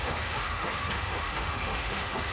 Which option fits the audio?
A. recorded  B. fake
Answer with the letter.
B